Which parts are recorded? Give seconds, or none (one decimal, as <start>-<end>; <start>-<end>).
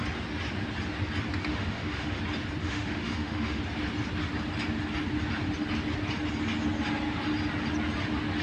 0.0-1.5; 2.2-2.6; 3.6-8.4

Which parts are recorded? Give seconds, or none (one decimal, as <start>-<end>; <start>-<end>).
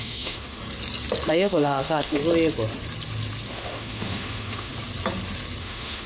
0.6-1.3; 2.2-3.5; 4.7-5.6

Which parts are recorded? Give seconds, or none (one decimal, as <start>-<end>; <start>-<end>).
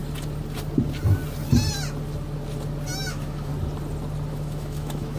0.0-3.1; 3.5-4.3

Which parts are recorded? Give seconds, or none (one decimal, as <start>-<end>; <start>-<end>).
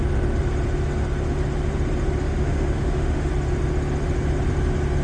0.0-2.2; 3.3-5.0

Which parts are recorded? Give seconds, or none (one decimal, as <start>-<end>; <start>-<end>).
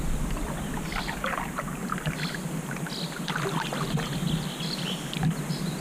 0.0-5.8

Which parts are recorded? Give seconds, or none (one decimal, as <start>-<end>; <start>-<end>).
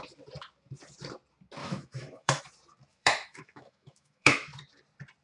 0.0-1.6; 2.4-2.9; 4.5-5.2